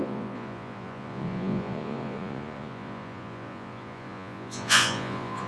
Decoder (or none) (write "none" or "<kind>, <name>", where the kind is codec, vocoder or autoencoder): vocoder, Vocos